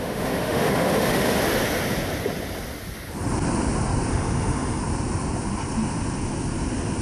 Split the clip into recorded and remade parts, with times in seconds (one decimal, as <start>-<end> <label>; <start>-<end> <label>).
0.0-1.4 remade; 1.4-4.1 recorded; 4.1-4.8 remade; 4.8-7.0 recorded